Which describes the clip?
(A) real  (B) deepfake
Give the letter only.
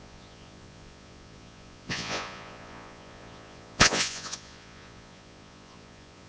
B